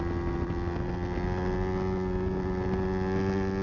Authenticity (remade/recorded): recorded